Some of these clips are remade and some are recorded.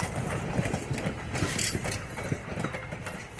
recorded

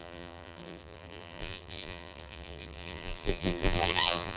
remade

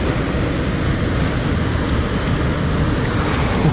recorded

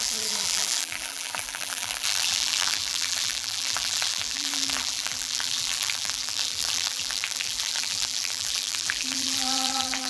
remade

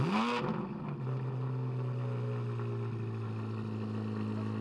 recorded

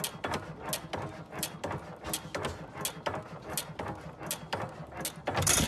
recorded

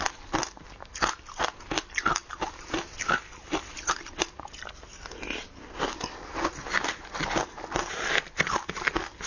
recorded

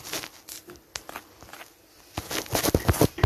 recorded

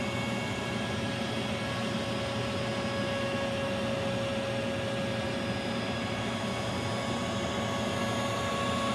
recorded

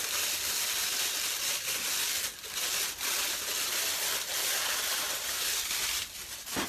recorded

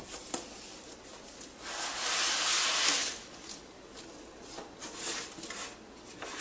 recorded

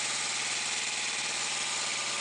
recorded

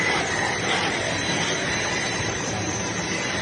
remade